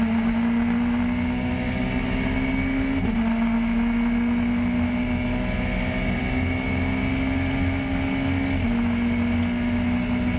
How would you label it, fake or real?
real